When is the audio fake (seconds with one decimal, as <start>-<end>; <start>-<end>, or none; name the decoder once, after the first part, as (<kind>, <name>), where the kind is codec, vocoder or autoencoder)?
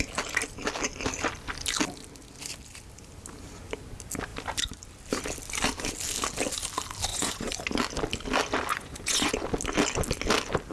7.1-7.6 (vocoder, Vocos); 8.7-9.3